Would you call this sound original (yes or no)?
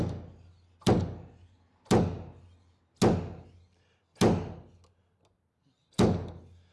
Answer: yes